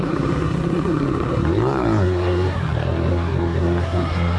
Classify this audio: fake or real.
fake